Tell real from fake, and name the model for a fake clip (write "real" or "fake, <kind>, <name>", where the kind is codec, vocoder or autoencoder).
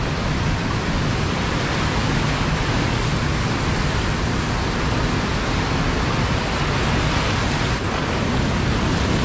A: real